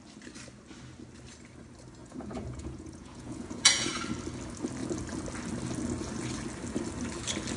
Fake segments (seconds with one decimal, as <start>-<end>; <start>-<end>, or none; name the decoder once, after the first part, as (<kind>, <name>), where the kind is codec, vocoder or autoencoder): 2.0-4.0 (vocoder, Vocos)